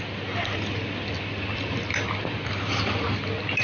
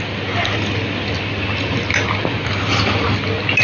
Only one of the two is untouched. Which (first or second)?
second